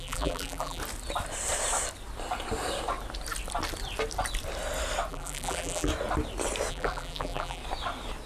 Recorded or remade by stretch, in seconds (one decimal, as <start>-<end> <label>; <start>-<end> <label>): 0.0-0.8 remade; 0.8-5.1 recorded; 5.1-5.9 remade; 5.9-6.7 recorded; 6.7-7.6 remade; 7.6-8.3 recorded